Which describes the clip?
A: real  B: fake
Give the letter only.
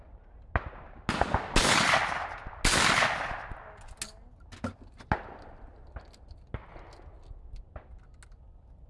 A